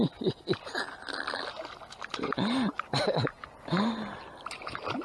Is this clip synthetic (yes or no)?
no